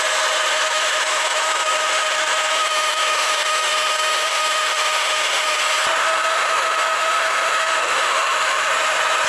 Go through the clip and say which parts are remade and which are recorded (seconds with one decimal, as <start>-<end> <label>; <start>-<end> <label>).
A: 0.0-0.5 recorded; 0.5-5.6 remade; 5.6-6.0 recorded; 6.0-8.7 remade; 8.7-9.3 recorded